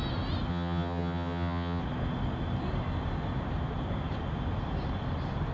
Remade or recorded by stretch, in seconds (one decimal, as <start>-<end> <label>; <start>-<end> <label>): 0.0-0.5 recorded; 0.5-1.8 remade; 1.8-5.5 recorded